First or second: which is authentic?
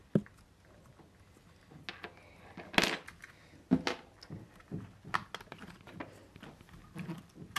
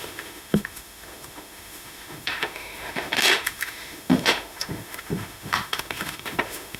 first